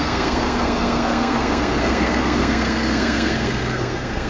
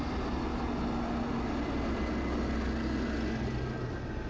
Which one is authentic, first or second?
second